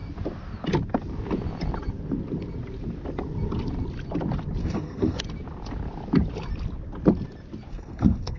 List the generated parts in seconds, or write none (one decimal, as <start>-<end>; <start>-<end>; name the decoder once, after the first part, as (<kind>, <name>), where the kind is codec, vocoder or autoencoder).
4.6-5.2 (codec, SNAC); 7.7-8.4

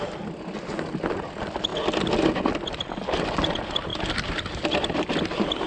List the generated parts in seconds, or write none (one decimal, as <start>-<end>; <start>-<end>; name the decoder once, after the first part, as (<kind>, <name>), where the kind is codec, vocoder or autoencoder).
none

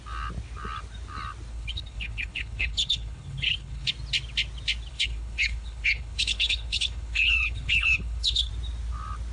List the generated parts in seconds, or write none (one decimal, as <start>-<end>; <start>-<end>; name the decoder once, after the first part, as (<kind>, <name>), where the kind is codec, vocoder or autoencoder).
1.5-3.9 (codec, HILCodec); 4.9-8.5